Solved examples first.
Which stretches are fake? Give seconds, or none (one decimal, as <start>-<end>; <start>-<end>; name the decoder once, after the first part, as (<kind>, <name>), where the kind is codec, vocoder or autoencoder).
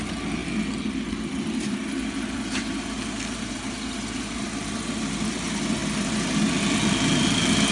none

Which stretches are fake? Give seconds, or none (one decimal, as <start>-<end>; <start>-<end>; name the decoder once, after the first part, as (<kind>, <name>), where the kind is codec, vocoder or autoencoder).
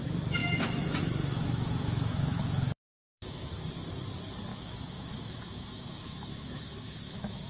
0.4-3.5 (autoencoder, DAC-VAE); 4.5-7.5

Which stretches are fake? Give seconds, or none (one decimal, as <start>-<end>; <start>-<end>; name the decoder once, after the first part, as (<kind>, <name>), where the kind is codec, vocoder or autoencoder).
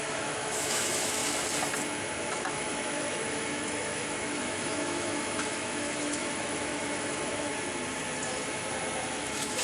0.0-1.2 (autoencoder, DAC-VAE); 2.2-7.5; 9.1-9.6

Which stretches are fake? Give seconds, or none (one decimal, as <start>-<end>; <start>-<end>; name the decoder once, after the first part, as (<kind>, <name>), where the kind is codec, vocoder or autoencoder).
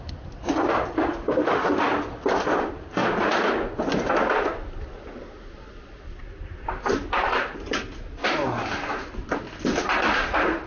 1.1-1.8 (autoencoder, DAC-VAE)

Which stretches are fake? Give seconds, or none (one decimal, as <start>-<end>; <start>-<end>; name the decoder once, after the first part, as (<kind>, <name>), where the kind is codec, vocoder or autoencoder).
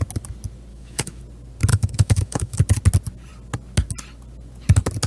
0.7-1.2 (autoencoder, DAC-VAE); 1.7-2.6